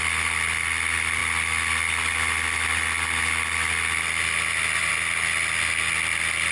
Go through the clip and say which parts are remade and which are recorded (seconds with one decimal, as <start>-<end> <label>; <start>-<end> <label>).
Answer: 0.0-6.5 recorded